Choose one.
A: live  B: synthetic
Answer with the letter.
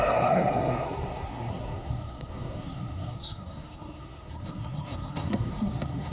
B